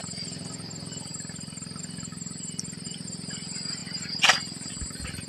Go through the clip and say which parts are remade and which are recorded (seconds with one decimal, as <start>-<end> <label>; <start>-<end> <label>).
0.0-1.1 recorded; 1.1-1.8 remade; 1.8-3.8 recorded; 3.8-4.7 remade; 4.7-5.3 recorded